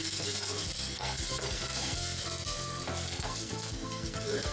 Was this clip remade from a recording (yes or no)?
yes